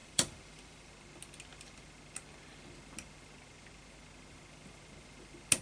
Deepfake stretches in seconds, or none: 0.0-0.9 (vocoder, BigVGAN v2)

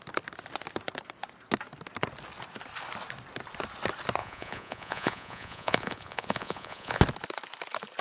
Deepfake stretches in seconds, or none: 4.2-7.0 (vocoder, Vocos)

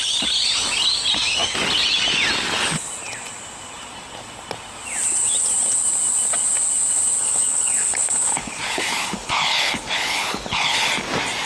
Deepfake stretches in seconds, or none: 7.2-10.9 (codec, HILCodec)

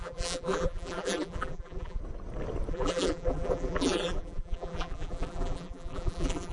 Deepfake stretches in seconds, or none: 0.0-2.0 (vocoder, BigVGAN v2); 2.7-6.5

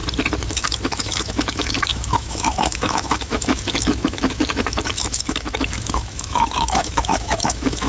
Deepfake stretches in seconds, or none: 0.5-7.9 (autoencoder, DAC-VAE)

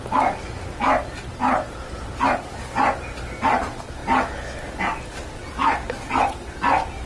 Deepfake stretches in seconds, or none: none

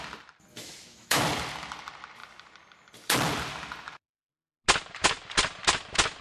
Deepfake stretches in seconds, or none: 0.5-1.2 (autoencoder, DAC-VAE)

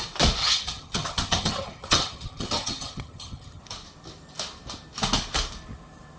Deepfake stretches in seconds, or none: 0.4-3.6 (vocoder, HiFi-GAN)